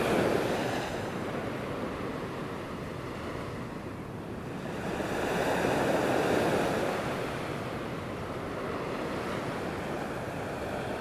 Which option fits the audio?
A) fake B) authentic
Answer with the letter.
B